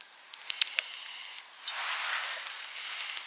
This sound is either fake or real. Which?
real